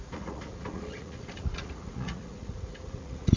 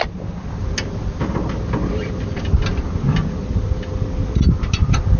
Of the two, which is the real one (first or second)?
second